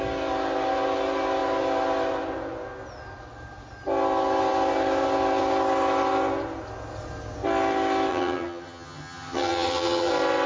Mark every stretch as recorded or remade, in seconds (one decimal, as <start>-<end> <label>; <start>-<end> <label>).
0.0-8.1 recorded; 8.1-10.1 remade; 10.1-10.5 recorded